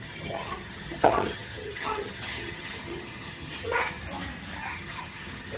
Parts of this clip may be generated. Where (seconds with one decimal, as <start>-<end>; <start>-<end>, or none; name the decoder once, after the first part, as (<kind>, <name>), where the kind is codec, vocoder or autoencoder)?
0.0-4.0 (vocoder, HiFi-GAN); 4.6-5.6